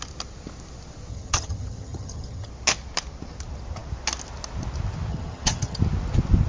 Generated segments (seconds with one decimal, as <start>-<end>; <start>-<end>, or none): 1.1-2.5; 5.1-5.8